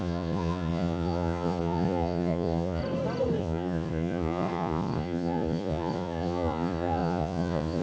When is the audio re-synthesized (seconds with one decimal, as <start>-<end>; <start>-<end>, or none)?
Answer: 0.0-2.8; 3.4-7.8